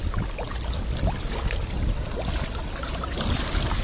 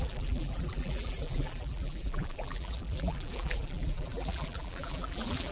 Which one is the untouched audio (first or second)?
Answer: first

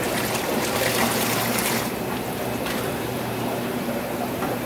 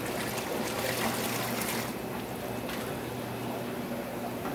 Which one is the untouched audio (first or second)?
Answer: second